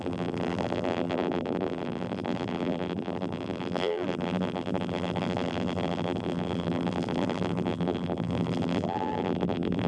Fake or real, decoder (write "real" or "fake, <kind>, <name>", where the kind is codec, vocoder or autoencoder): fake, vocoder, BigVGAN v2